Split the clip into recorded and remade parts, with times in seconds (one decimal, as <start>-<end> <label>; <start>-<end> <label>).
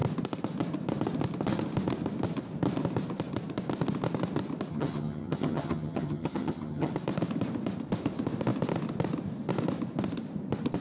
0.0-4.7 recorded; 4.7-6.9 remade; 6.9-10.8 recorded